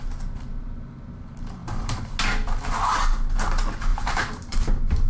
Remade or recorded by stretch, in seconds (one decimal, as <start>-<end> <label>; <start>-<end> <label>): 0.0-1.6 recorded; 1.6-2.1 remade; 2.1-3.9 recorded; 3.9-5.1 remade